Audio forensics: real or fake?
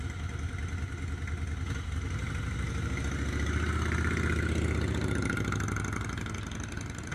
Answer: real